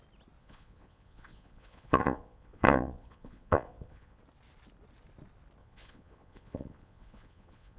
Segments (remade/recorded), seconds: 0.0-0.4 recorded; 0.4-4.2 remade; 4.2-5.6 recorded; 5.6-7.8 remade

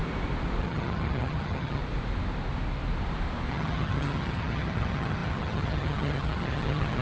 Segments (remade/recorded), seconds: 0.0-0.6 recorded; 0.6-1.8 remade; 1.8-3.5 recorded; 3.5-7.0 remade

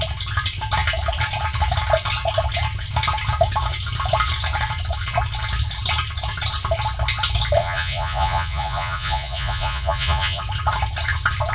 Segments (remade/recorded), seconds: 0.0-7.6 recorded; 7.6-10.4 remade; 10.4-11.5 recorded

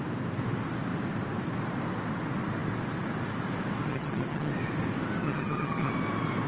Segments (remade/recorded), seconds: 0.0-3.9 recorded; 3.9-4.5 remade; 4.5-5.2 recorded; 5.2-5.9 remade; 5.9-6.5 recorded

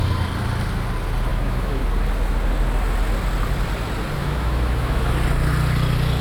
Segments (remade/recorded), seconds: 0.0-1.3 recorded; 1.3-1.8 remade; 1.8-4.2 recorded; 4.2-5.1 remade; 5.1-6.2 recorded